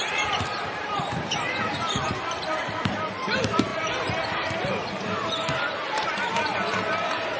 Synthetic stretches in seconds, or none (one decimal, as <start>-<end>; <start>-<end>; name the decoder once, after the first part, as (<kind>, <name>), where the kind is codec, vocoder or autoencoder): 0.0-3.7 (vocoder, BigVGAN v2); 4.9-7.4